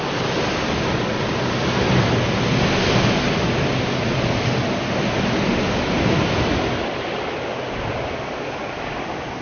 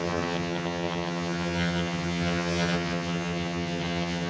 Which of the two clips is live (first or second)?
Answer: first